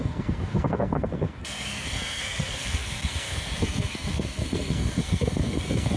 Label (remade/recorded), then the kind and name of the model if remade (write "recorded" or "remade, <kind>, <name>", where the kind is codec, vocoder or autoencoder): remade, codec, SNAC